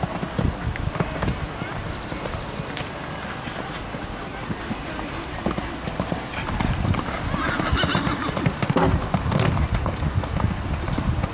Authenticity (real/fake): real